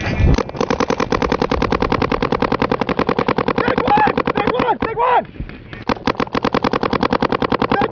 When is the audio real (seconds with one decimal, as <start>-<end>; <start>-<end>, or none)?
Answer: 0.0-7.9